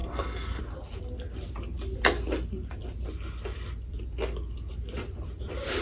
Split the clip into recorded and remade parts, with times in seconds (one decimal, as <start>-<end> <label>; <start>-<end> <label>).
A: 0.0-0.6 remade; 0.6-5.8 recorded